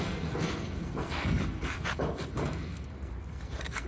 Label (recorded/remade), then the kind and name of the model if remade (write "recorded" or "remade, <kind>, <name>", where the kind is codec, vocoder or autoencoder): remade, codec, SNAC